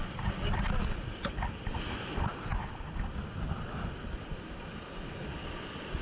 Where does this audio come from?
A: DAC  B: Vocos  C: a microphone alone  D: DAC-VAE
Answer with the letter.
C